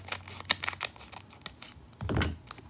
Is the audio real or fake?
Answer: real